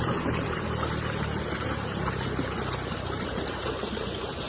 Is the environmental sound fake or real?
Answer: fake